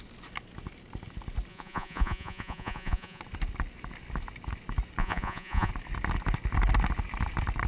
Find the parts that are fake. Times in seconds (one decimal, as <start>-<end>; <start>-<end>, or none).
1.5-3.2; 5.0-5.7